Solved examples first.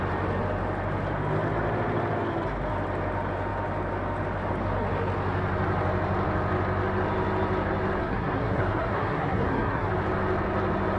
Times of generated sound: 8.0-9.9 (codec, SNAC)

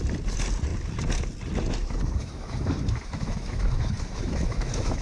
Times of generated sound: 1.8-5.0 (autoencoder, DAC-VAE)

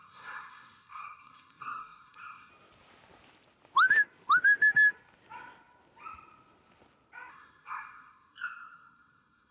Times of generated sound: 0.0-2.5 (codec, SNAC); 7.3-9.5

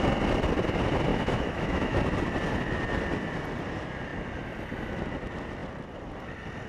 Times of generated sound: 1.1-2.0 (autoencoder, DAC-VAE)

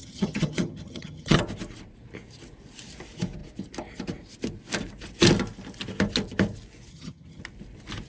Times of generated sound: 0.0-1.4 (vocoder, HiFi-GAN); 6.9-7.4

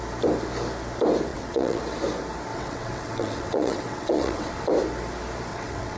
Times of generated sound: 1.3-1.8 (vocoder, WaveNeXt); 2.5-4.7; 5.5-6.0

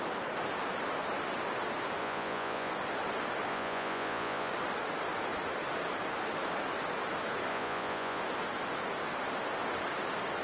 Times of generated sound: 2.0-2.7 (vocoder, Vocos); 3.5-4.5; 7.5-8.2